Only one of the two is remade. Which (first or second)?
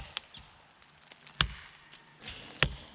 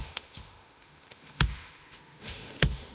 second